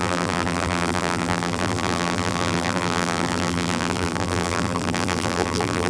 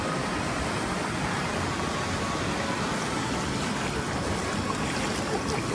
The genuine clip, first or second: second